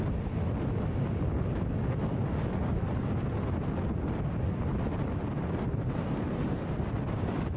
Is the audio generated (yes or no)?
no